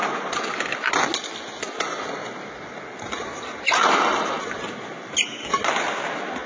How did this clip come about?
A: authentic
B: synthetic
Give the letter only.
A